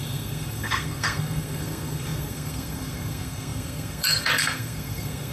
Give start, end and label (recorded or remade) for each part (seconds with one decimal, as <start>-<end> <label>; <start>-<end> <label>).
0.0-5.3 remade